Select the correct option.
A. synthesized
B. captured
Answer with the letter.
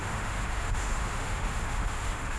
A